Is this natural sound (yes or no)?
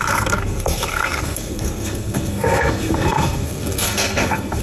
no